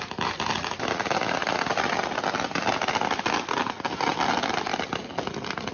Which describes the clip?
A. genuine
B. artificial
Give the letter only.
A